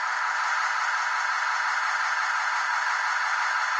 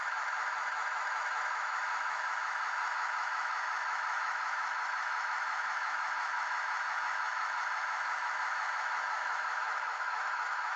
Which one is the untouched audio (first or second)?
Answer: first